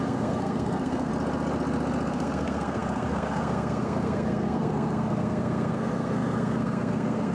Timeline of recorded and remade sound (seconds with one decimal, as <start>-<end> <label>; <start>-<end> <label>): 0.0-1.1 remade; 1.1-2.1 recorded; 2.1-7.3 remade